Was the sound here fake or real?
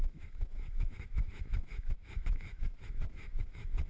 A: fake